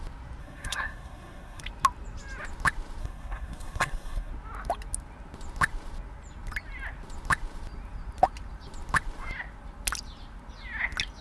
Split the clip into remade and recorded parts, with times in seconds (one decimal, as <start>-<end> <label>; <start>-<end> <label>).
0.0-0.4 recorded; 0.4-1.6 remade; 1.6-3.0 recorded; 3.0-4.3 remade; 4.3-11.2 recorded